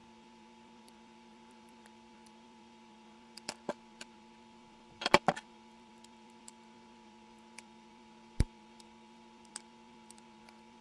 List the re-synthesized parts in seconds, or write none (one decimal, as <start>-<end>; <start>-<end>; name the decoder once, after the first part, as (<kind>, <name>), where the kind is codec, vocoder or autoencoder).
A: 0.0-10.8 (vocoder, BigVGAN v2)